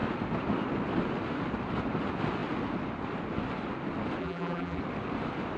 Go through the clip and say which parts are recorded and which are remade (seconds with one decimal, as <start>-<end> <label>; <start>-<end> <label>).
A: 0.0-4.2 recorded; 4.2-4.8 remade; 4.8-5.6 recorded